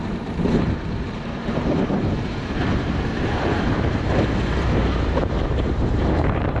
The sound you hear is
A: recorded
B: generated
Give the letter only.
B